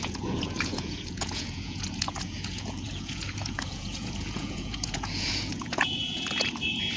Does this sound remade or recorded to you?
remade